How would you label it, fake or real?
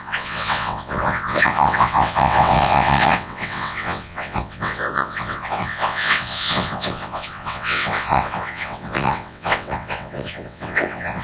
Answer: fake